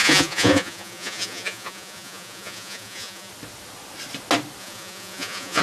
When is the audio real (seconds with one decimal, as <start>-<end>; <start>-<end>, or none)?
3.3-4.6